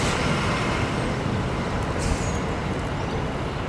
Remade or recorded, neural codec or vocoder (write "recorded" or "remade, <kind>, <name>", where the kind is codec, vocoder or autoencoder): recorded